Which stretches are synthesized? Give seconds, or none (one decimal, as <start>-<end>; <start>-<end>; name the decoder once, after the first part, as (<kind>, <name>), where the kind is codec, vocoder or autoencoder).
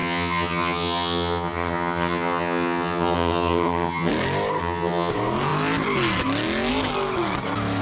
0.0-4.1 (vocoder, HiFi-GAN); 4.6-5.1